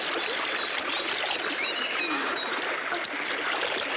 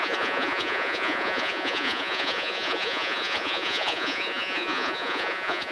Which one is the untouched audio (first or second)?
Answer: first